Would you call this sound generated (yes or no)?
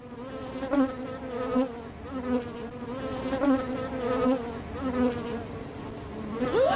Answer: no